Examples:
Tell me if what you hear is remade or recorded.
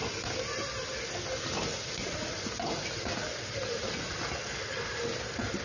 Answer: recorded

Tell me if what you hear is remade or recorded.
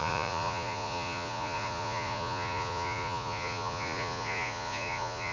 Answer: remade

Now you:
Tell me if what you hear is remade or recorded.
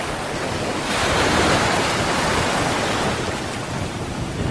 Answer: remade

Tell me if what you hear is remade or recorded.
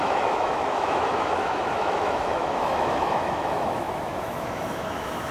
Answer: remade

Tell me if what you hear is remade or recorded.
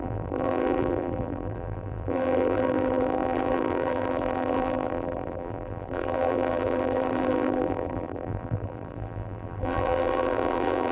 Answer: remade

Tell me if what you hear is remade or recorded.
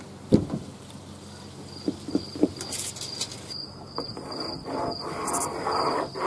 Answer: recorded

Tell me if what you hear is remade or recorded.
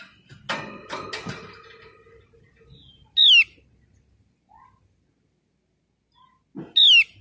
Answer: recorded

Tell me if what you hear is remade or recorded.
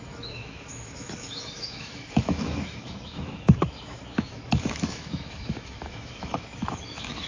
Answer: remade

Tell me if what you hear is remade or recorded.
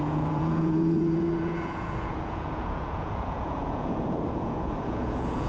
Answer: remade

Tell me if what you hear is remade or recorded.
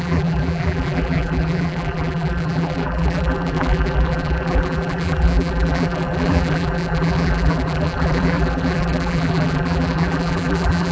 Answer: remade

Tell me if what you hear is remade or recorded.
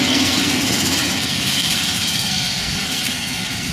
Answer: remade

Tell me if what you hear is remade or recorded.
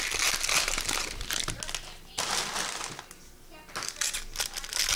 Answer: recorded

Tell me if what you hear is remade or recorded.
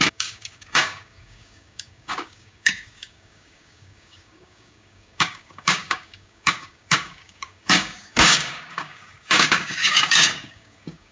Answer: remade